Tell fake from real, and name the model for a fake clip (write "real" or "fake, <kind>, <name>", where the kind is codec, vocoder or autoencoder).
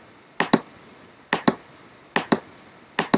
real